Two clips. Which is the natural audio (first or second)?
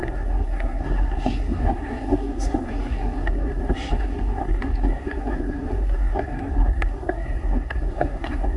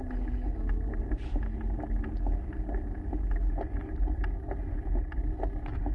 second